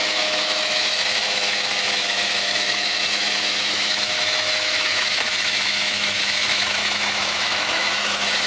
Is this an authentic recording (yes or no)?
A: no